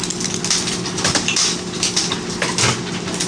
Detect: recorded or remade recorded